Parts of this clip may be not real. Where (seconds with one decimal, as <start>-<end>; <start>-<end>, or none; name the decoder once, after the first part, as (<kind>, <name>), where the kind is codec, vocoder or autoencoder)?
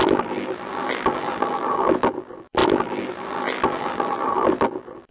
0.0-5.1 (vocoder, BigVGAN v2)